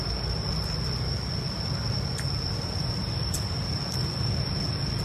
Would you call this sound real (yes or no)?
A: yes